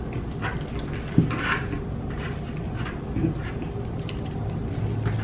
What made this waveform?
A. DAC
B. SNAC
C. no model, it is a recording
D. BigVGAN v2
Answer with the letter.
C